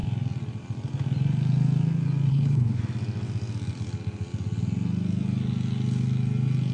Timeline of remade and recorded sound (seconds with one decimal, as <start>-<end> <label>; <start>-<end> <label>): 0.0-2.3 recorded; 2.3-2.8 remade; 2.8-6.7 recorded